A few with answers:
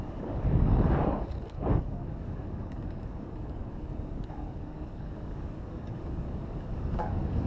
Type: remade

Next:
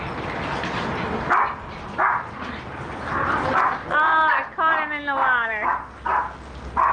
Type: recorded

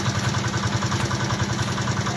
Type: recorded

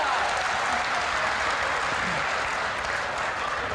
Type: recorded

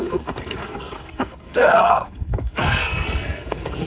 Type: remade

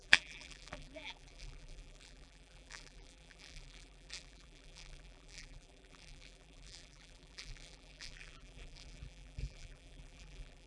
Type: remade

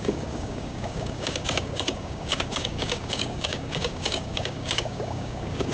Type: remade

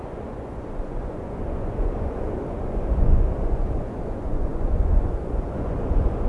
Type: remade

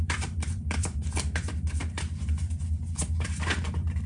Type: remade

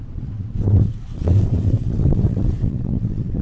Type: remade